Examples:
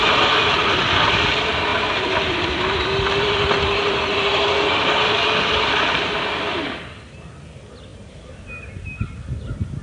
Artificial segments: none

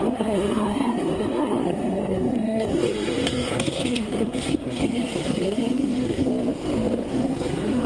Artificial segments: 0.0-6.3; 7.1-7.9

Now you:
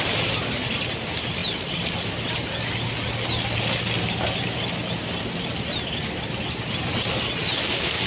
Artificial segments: none

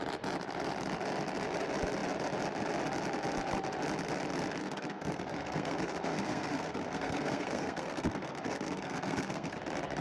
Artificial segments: 4.6-9.6

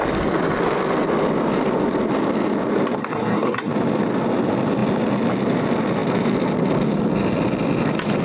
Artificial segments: 3.0-3.7

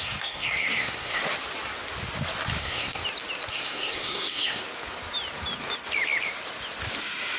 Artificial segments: 0.0-1.2; 2.6-3.0; 3.5-4.6

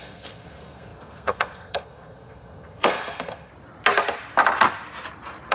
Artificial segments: 0.0-3.5

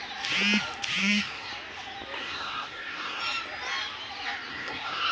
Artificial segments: 1.0-1.5; 2.2-3.2; 4.5-5.1